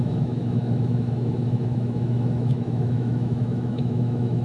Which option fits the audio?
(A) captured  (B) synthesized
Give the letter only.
B